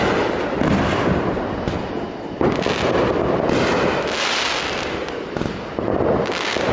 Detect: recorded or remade recorded